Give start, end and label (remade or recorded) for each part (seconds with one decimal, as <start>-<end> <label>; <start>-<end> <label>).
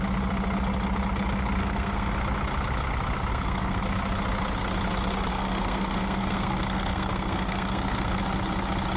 0.0-1.6 recorded; 1.6-2.1 remade; 2.1-3.3 recorded; 3.3-3.8 remade; 3.8-5.3 recorded; 5.3-8.2 remade; 8.2-9.0 recorded